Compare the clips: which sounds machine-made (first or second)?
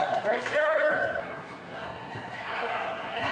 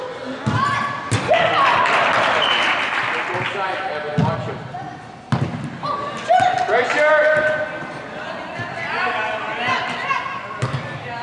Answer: first